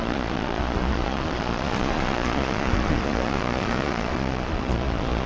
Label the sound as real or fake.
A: fake